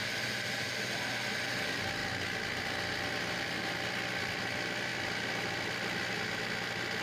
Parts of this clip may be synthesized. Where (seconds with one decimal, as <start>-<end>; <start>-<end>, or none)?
none